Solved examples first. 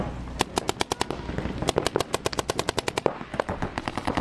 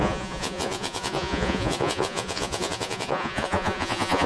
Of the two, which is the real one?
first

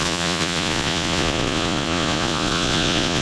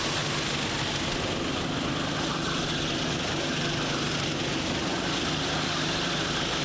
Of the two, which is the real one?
second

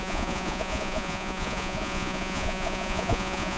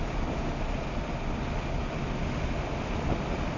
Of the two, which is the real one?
second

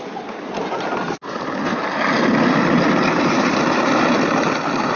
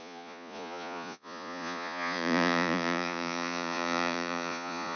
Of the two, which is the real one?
first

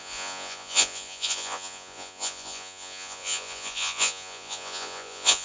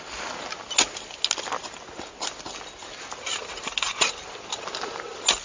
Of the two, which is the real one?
second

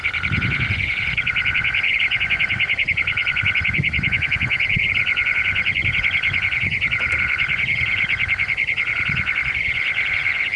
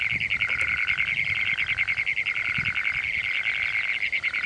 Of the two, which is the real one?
second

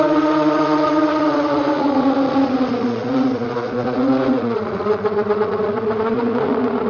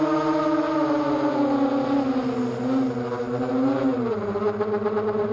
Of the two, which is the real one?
second